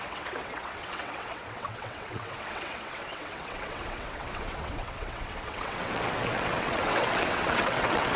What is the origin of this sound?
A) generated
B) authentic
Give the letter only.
A